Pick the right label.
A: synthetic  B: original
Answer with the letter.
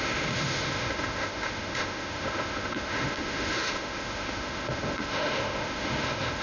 A